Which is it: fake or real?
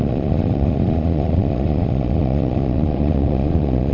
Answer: fake